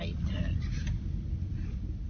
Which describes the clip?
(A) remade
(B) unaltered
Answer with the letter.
B